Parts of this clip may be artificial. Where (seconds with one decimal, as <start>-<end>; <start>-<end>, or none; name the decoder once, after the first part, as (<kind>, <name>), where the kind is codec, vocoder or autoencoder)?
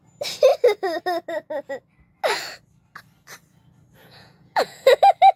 4.0-5.0 (vocoder, Vocos)